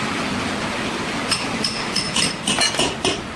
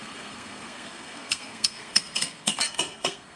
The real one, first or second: first